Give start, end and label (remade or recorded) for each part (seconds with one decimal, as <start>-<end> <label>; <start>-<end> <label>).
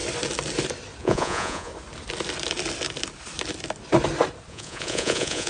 0.0-1.0 recorded; 1.0-1.7 remade; 1.7-4.5 recorded; 4.5-5.5 remade